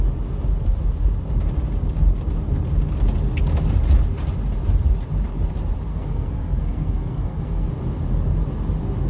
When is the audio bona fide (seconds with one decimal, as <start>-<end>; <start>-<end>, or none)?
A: 0.0-5.9; 7.7-9.1